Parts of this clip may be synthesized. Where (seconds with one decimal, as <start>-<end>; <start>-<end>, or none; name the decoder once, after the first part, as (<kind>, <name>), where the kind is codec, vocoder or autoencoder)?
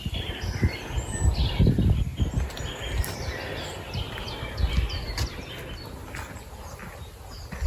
none